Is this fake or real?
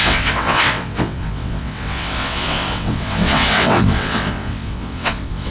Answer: fake